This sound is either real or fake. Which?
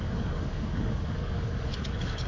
fake